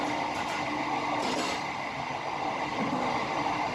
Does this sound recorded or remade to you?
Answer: recorded